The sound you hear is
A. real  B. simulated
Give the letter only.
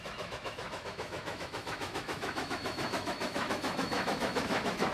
B